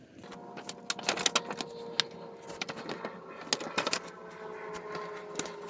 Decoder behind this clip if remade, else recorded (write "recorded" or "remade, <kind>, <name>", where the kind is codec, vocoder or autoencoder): recorded